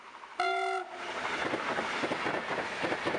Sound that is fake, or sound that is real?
real